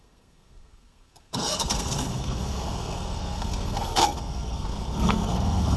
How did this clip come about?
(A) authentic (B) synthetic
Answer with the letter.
B